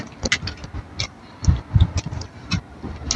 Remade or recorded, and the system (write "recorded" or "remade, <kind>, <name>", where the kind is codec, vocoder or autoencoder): recorded